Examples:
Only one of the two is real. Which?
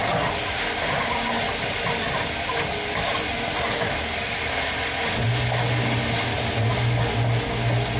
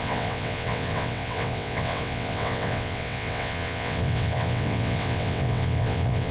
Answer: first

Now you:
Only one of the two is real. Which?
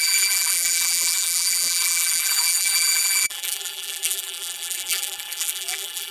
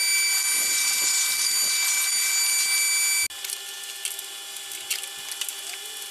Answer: second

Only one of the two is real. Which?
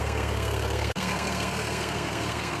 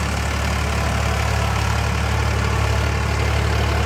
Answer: second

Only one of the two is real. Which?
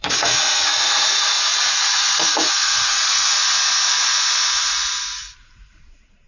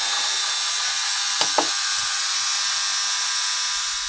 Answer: second